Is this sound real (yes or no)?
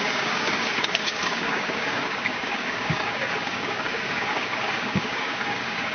no